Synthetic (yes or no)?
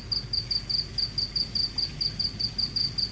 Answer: no